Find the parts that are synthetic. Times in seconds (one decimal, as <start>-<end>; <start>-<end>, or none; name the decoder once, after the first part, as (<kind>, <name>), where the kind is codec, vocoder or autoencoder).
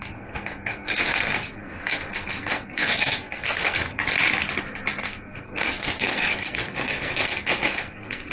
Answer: 0.0-4.0 (codec, SNAC); 5.0-8.3